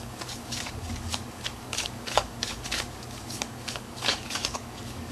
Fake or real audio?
fake